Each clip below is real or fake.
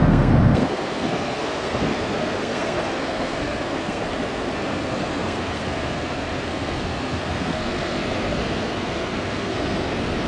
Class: fake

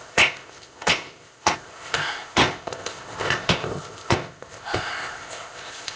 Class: fake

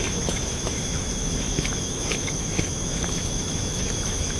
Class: fake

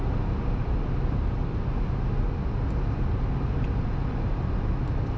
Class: real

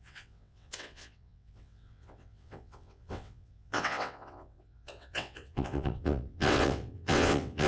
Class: fake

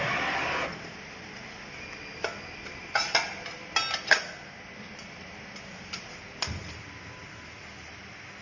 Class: real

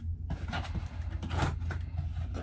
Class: real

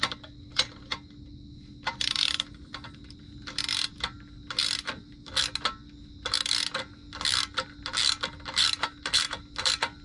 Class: real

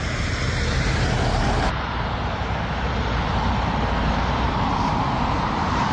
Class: fake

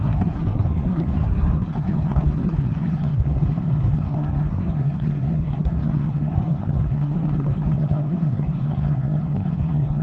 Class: fake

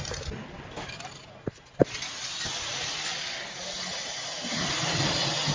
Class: real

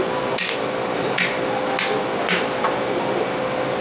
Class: real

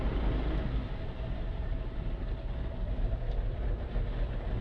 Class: real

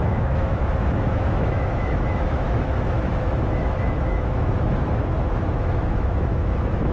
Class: fake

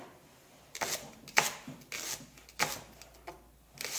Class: real